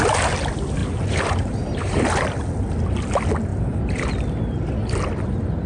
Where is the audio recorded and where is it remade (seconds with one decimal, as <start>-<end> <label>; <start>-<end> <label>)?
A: 0.0-0.8 recorded; 0.8-2.0 remade; 2.0-3.5 recorded; 3.5-4.1 remade; 4.1-5.7 recorded